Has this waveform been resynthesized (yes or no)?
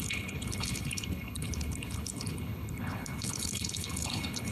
yes